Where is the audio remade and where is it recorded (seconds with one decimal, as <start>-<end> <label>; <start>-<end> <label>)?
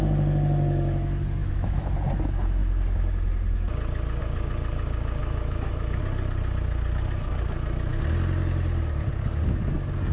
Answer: 0.0-1.4 recorded; 1.4-1.9 remade; 1.9-5.2 recorded; 5.2-6.0 remade; 6.0-10.1 recorded